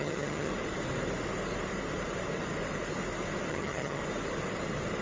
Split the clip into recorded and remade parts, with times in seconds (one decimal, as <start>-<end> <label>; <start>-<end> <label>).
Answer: 0.0-0.5 remade; 0.5-3.5 recorded; 3.5-4.0 remade; 4.0-5.0 recorded